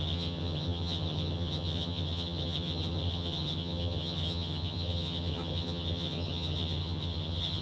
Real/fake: fake